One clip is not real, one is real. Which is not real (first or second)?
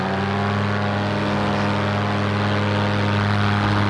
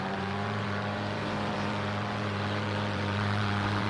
second